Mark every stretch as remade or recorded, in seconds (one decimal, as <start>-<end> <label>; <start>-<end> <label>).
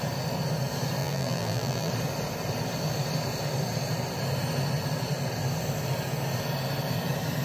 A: 0.0-1.0 recorded; 1.0-1.9 remade; 1.9-7.4 recorded